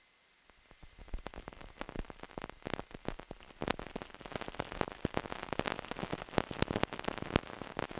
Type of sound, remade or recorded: recorded